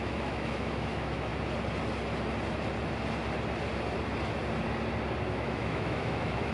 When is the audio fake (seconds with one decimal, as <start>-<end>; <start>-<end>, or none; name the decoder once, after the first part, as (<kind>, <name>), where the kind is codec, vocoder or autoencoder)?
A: 0.0-1.3 (autoencoder, DAC-VAE); 5.2-6.5